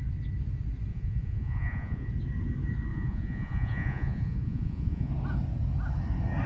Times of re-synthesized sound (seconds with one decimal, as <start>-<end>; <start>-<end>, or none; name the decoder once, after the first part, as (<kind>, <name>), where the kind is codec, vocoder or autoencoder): 0.9-2.1 (vocoder, Vocos); 2.9-5.1